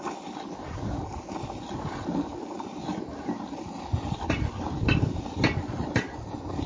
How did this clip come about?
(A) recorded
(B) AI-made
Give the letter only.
A